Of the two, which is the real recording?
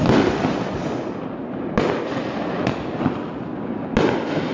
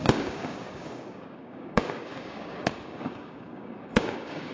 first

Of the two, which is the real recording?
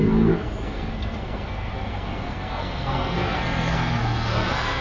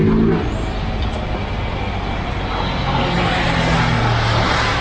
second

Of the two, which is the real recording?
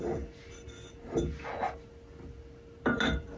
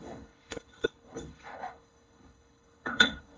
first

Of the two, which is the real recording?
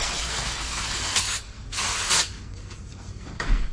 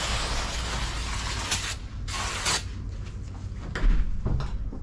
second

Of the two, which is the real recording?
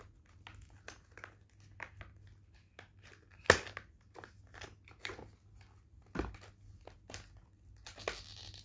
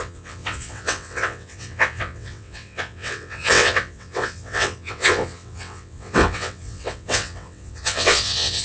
first